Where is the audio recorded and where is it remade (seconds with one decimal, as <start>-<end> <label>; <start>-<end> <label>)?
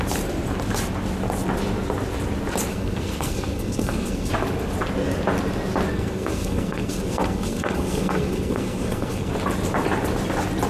0.0-2.7 recorded; 2.7-4.3 remade; 4.3-5.9 recorded; 5.9-9.3 remade; 9.3-10.7 recorded